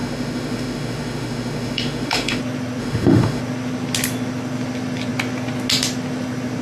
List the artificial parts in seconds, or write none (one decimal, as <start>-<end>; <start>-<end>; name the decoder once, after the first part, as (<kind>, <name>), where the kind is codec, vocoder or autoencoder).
0.0-2.4 (autoencoder, DAC-VAE); 2.8-3.4